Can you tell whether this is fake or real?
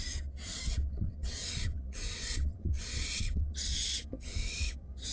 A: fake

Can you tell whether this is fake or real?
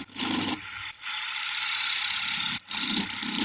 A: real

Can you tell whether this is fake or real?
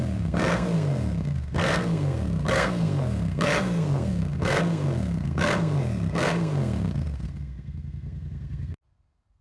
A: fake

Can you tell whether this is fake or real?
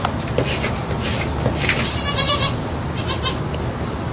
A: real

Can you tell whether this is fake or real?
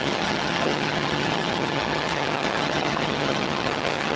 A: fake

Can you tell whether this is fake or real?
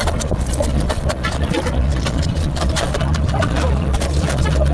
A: fake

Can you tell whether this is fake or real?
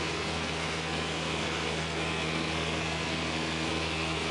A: fake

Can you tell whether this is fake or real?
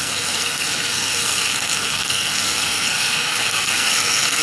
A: fake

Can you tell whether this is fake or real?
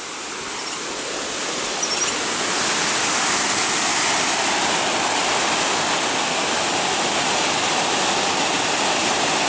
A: real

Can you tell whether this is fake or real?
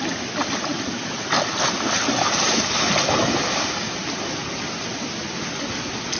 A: real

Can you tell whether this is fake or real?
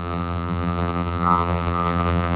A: fake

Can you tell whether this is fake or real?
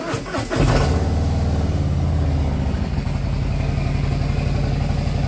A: real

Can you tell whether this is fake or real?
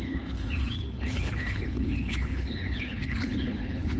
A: fake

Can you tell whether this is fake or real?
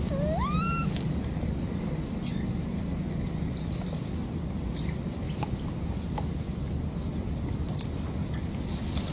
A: real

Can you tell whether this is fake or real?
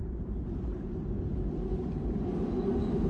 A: real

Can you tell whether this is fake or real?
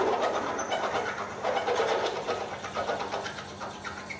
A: real